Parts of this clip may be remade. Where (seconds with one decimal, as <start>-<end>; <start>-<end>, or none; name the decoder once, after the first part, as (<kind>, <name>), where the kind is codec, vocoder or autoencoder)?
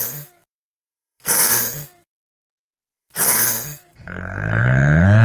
0.0-5.2 (codec, SNAC)